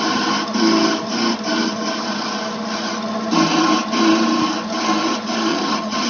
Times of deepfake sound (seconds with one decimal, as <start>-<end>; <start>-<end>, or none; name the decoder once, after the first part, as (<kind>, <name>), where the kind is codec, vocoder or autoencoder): 5.5-6.1 (vocoder, HiFi-GAN)